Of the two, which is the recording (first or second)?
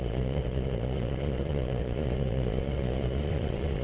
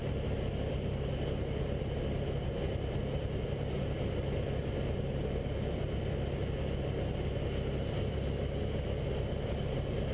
second